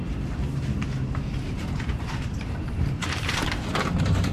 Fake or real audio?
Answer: fake